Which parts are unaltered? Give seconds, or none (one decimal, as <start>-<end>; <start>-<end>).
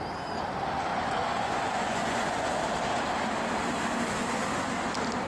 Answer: 0.0-0.9; 2.6-5.3